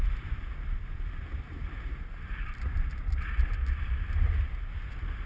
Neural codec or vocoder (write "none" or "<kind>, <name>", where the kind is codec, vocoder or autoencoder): none